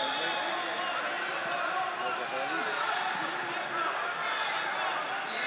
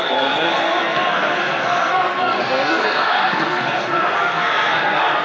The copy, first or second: second